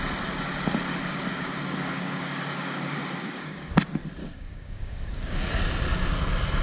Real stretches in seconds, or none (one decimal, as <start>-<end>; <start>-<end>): 0.0-1.1; 3.7-4.2; 5.6-6.6